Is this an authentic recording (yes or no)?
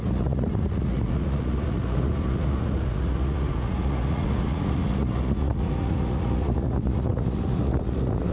no